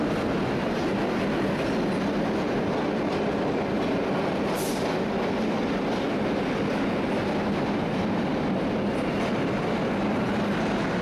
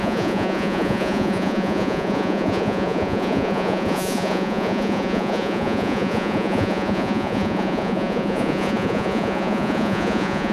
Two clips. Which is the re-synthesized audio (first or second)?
second